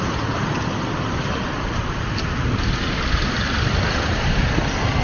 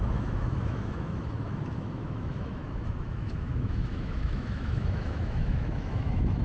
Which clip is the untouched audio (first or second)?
first